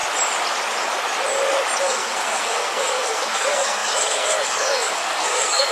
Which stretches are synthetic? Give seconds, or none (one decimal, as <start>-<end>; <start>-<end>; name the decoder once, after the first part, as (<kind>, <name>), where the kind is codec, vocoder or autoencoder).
1.8-5.7 (codec, SNAC)